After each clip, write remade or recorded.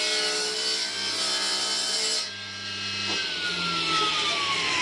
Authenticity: recorded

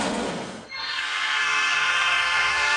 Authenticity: remade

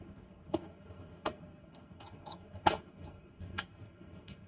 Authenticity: remade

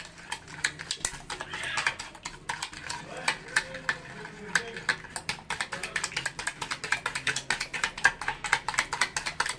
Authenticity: recorded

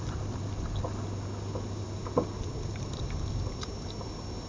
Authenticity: recorded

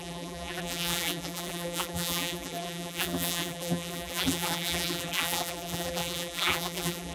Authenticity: remade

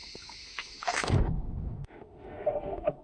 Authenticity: remade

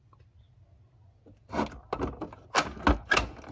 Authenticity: recorded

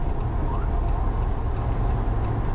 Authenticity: recorded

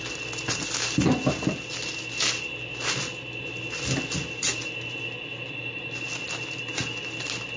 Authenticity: recorded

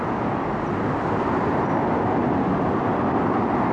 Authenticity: recorded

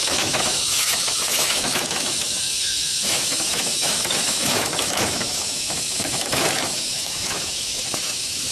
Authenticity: remade